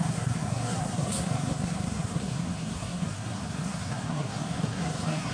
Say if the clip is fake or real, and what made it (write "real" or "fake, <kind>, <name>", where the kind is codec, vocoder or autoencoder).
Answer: fake, codec, SNAC